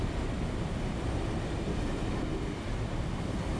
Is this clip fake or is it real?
real